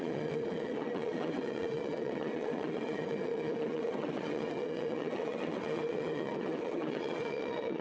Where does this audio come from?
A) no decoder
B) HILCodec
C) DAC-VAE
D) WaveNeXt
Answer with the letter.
D